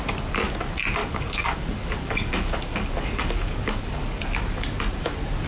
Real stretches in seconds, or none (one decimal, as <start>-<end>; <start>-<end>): 0.0-1.0; 4.2-5.5